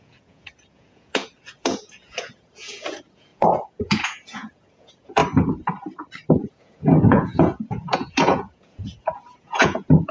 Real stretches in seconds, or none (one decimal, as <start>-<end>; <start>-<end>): 5.2-6.5